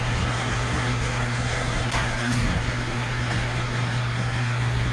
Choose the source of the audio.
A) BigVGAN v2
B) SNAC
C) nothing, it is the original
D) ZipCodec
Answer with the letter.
B